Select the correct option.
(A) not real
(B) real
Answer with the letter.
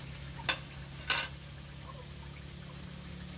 B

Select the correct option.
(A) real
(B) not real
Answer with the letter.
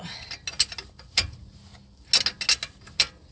A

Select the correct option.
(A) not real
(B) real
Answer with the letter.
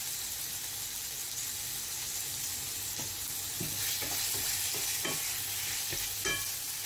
B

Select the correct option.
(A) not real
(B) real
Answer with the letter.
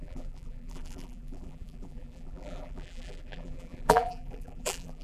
A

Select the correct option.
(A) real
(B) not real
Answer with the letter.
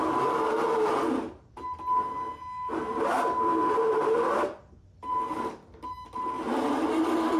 A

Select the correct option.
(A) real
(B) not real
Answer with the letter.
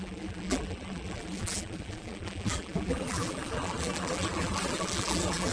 B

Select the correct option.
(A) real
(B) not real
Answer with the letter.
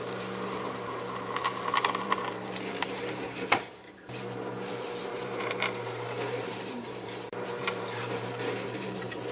B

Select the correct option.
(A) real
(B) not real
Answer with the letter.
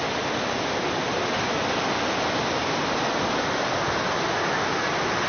A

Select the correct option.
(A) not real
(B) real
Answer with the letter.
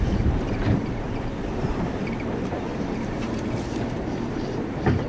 A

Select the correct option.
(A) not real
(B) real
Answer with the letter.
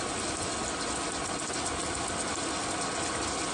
B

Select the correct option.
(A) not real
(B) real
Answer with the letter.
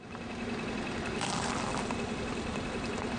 B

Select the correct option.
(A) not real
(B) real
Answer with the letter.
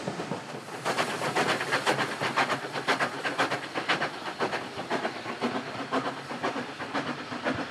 B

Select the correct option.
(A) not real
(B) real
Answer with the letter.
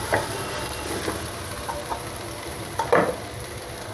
A